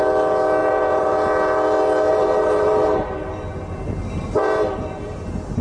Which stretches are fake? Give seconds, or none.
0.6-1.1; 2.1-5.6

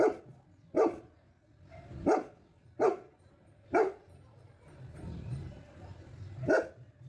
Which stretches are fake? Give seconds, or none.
2.6-6.0

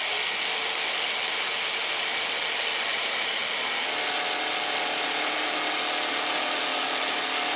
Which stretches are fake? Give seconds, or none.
2.9-3.4